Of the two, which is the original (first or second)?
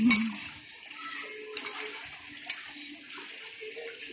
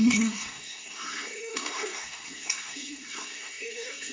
first